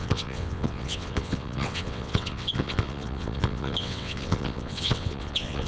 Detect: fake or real fake